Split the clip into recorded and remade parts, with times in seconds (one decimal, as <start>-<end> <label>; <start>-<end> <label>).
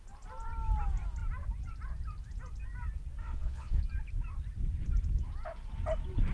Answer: 0.0-3.2 recorded; 3.2-3.8 remade; 3.8-6.3 recorded